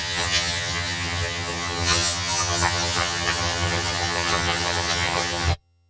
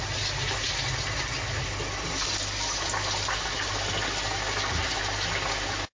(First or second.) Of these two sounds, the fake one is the first